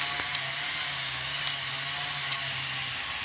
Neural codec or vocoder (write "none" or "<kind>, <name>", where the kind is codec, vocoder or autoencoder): none